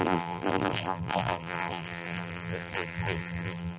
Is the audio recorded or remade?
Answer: remade